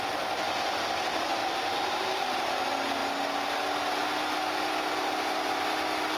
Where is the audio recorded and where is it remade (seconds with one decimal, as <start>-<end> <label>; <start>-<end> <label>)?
0.0-1.4 recorded; 1.4-2.2 remade; 2.2-6.2 recorded